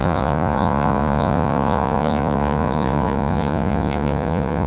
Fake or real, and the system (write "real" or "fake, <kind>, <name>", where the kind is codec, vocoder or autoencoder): fake, vocoder, Vocos